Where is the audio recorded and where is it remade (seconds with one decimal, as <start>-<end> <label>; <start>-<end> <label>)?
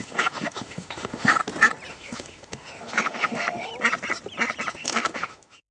0.0-1.4 remade; 1.4-1.9 recorded; 1.9-3.7 remade; 3.7-4.7 recorded; 4.7-5.7 remade